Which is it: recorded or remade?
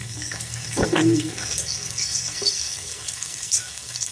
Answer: remade